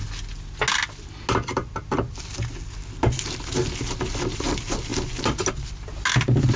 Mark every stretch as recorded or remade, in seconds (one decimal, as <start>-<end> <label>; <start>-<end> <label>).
0.0-6.6 recorded